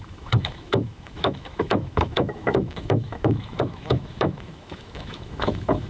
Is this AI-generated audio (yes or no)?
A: yes